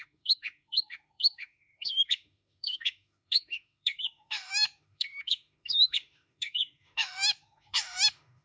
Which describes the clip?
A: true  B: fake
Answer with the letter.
B